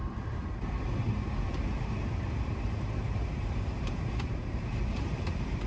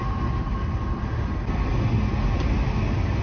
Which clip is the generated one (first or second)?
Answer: first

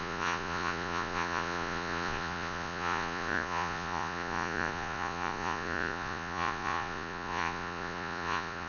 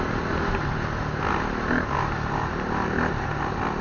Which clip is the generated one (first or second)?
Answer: first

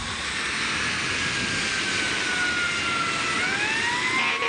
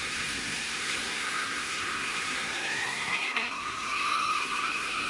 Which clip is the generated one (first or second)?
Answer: second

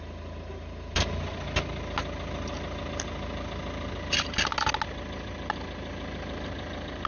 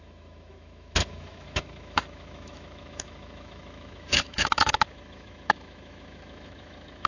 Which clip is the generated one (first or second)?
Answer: second